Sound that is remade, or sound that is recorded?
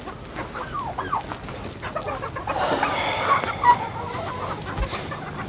recorded